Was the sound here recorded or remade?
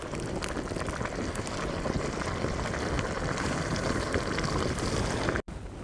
recorded